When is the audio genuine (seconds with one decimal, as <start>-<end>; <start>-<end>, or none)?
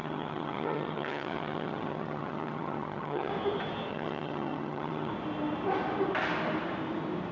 3.3-3.9; 5.1-7.3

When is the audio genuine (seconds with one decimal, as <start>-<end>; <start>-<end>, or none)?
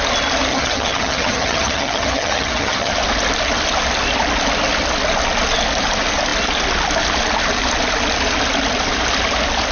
0.0-0.5; 2.9-9.7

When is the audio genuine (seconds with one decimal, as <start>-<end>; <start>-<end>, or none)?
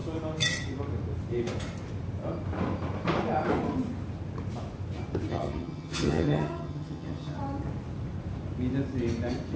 0.0-5.3; 7.4-9.6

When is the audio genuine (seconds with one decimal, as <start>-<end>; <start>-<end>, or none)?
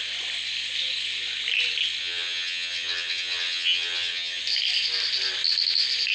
0.0-2.0; 4.4-6.1